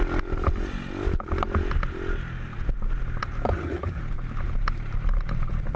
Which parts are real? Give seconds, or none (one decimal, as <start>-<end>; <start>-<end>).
0.0-3.5; 4.0-5.8